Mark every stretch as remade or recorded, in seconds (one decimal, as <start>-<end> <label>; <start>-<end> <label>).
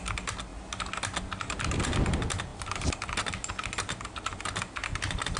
0.0-5.4 recorded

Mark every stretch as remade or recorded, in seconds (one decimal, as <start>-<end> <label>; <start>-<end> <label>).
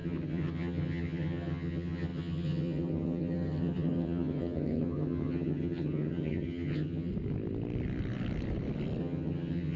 0.0-7.1 remade; 7.1-9.0 recorded; 9.0-9.8 remade